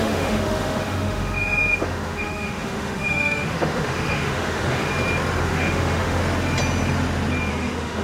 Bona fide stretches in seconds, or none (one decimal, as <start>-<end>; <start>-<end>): 4.9-5.4; 6.2-7.5